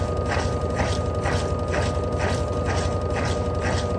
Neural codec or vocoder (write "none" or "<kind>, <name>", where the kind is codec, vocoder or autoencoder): none